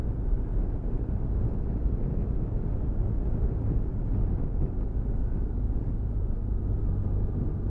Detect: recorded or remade recorded